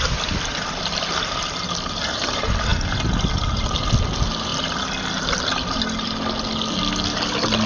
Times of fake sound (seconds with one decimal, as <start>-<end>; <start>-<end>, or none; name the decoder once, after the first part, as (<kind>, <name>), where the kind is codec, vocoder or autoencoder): none